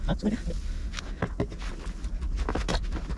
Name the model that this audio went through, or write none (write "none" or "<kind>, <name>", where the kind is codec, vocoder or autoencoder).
none